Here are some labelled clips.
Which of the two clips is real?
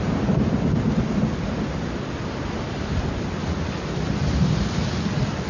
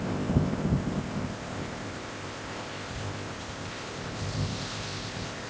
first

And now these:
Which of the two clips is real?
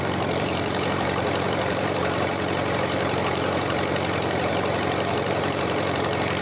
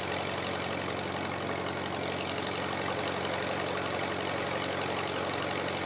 second